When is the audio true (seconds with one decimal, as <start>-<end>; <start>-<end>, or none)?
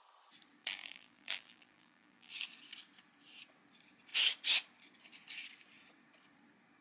0.0-0.6; 2.3-6.8